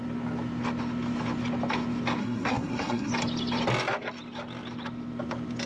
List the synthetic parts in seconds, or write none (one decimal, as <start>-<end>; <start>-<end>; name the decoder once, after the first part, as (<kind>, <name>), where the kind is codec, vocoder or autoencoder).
2.2-3.1 (codec, SNAC)